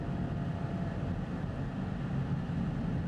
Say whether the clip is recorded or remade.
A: recorded